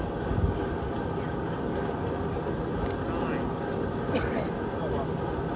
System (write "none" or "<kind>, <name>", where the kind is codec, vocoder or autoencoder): none